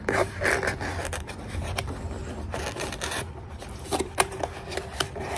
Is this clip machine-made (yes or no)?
yes